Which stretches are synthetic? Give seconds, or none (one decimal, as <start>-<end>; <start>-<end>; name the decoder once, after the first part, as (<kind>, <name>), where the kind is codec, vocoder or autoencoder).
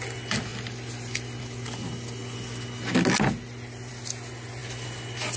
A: none